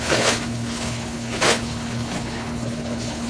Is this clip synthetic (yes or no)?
yes